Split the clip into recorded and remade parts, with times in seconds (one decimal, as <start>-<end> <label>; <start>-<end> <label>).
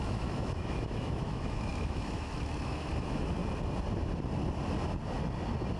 0.0-3.4 remade; 3.4-5.8 recorded